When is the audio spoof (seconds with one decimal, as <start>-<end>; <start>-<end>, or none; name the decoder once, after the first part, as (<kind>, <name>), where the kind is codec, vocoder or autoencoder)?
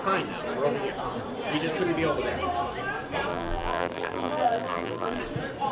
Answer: 3.3-5.2 (vocoder, BigVGAN v2)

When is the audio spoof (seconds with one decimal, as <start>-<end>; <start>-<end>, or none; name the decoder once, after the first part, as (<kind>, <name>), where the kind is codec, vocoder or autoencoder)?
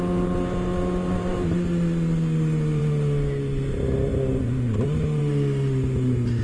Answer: none